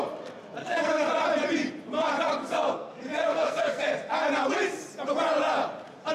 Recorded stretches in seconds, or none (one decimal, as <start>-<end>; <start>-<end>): 0.0-0.6; 1.1-2.4; 4.1-6.1